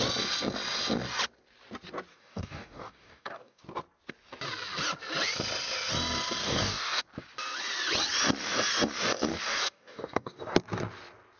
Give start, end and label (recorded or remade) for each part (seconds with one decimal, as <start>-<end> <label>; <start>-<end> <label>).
0.0-2.1 recorded; 2.1-3.6 remade; 3.6-6.4 recorded; 6.4-7.0 remade; 7.0-9.3 recorded; 9.3-10.4 remade; 10.4-11.4 recorded